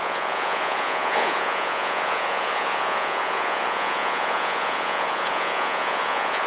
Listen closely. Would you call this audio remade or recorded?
remade